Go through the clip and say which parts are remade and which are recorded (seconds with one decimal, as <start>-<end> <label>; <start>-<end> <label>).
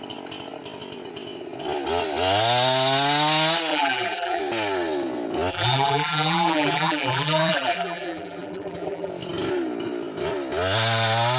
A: 0.0-3.7 recorded; 3.7-4.4 remade; 4.4-5.5 recorded; 5.5-9.1 remade; 9.1-11.4 recorded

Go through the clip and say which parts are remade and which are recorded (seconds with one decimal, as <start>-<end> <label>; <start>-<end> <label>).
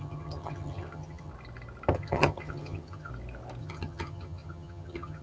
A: 0.0-1.3 remade; 1.3-1.9 recorded; 1.9-3.1 remade; 3.1-3.6 recorded; 3.6-5.2 remade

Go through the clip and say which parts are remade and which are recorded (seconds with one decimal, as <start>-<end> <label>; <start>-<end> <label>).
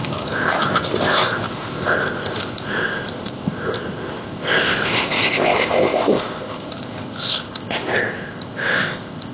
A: 0.0-9.3 remade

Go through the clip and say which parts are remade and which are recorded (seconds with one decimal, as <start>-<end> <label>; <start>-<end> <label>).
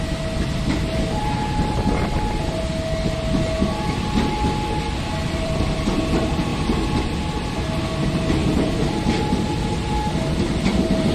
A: 0.0-5.2 recorded; 5.2-5.9 remade; 5.9-8.4 recorded; 8.4-9.3 remade; 9.3-11.1 recorded